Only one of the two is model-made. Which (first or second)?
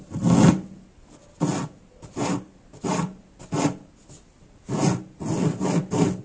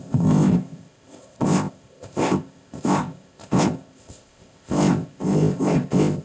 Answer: second